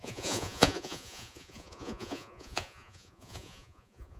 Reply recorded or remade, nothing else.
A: remade